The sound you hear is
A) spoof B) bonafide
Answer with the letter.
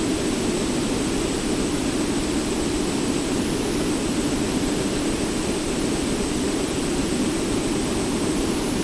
B